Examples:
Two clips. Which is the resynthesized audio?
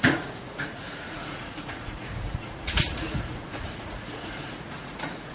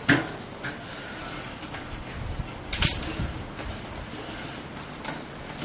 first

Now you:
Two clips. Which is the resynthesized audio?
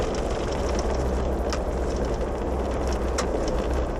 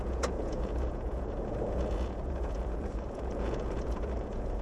second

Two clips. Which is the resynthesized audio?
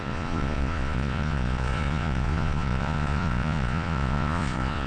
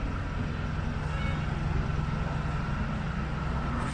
first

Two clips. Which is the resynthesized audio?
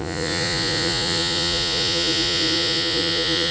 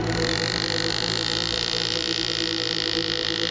first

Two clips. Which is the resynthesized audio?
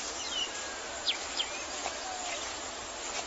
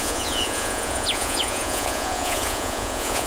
second